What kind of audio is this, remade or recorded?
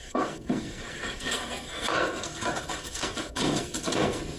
remade